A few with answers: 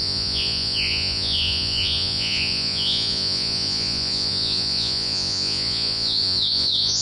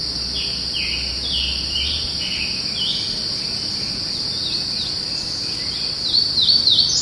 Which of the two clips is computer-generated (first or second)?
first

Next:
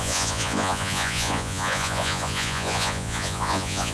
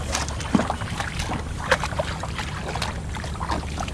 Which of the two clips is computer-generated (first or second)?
first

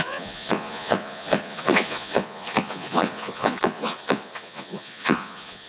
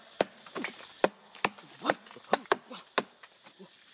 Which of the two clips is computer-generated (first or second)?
first